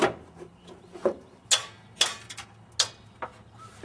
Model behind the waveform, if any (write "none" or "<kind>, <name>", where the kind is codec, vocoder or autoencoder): none